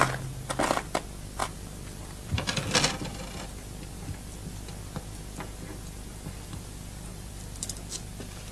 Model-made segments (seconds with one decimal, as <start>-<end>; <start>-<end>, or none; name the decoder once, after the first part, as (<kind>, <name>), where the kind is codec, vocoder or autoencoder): 1.4-2.9 (vocoder, BigVGAN v2); 7.1-7.6